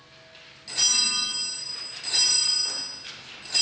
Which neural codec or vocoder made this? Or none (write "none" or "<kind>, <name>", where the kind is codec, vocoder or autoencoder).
none